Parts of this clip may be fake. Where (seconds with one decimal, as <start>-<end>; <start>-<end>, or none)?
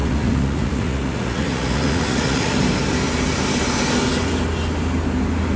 0.0-2.6